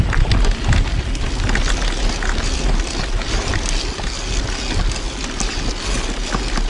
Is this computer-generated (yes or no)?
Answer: no